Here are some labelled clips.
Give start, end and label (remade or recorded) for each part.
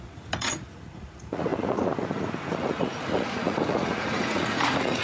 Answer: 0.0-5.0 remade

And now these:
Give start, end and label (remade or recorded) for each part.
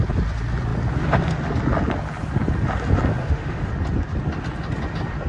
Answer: 0.0-3.2 recorded; 3.2-3.7 remade; 3.7-5.3 recorded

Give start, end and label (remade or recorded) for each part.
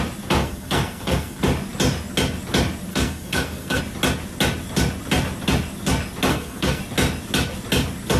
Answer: 0.0-0.4 recorded; 0.4-1.4 remade; 1.4-2.9 recorded; 2.9-3.8 remade; 3.8-6.3 recorded; 6.3-6.8 remade; 6.8-8.2 recorded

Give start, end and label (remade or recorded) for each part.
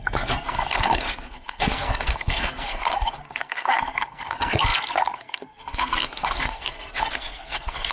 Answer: 0.0-7.9 remade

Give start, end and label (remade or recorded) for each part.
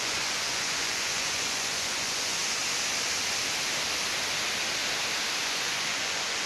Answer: 0.0-2.6 remade; 2.6-5.4 recorded; 5.4-6.5 remade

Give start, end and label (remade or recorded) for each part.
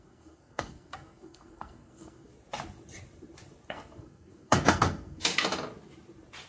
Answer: 0.0-2.3 remade; 2.3-3.7 recorded; 3.7-5.3 remade; 5.3-6.5 recorded